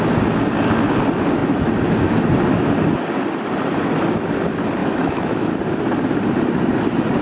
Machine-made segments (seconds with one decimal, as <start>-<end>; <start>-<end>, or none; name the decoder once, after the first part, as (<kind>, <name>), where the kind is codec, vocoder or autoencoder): 4.8-5.5 (autoencoder, DAC-VAE)